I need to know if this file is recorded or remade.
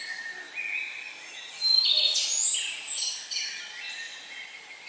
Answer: recorded